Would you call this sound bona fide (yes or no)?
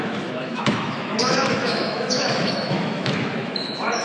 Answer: no